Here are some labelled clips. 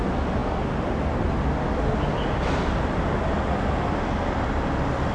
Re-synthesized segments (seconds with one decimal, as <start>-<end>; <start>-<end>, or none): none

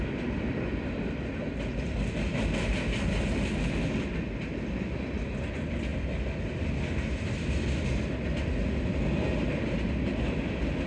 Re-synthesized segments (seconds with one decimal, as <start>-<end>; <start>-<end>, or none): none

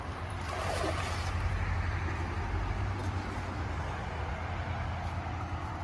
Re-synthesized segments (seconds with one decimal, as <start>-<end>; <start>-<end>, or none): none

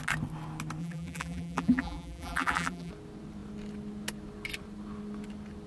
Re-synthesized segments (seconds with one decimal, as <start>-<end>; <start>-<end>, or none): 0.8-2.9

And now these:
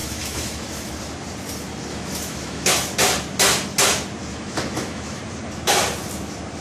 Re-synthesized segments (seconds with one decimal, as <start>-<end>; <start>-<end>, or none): 0.0-0.9; 1.9-2.7; 4.3-5.2

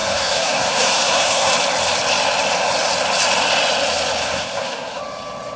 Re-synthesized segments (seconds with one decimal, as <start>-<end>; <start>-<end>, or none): 0.0-1.5; 4.2-5.0

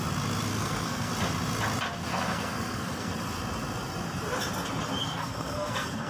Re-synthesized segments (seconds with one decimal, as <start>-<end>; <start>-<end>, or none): 0.5-1.1; 2.1-3.1; 5.0-6.1